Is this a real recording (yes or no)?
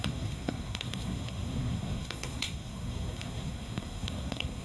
no